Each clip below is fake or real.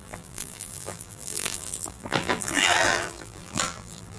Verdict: fake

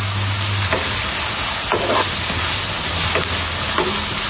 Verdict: real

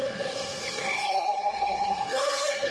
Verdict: fake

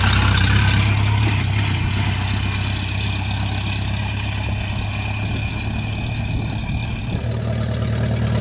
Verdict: real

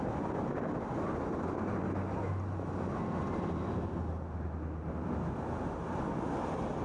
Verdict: real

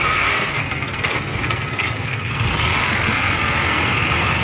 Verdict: fake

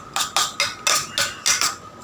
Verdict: real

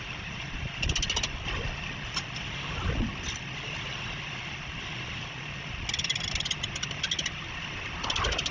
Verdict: real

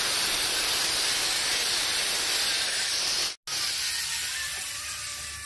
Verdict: real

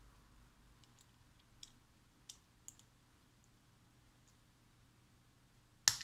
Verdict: real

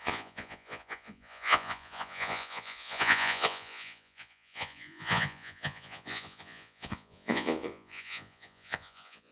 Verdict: fake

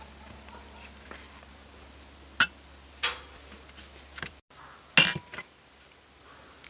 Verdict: real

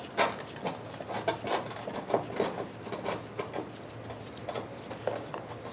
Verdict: real